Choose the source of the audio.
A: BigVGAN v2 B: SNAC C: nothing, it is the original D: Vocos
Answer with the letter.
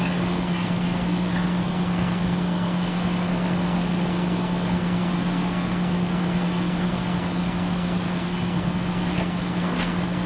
B